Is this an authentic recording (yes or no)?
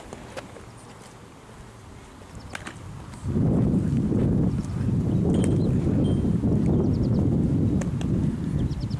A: yes